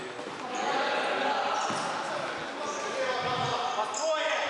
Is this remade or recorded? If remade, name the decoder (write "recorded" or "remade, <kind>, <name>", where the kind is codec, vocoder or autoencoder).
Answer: recorded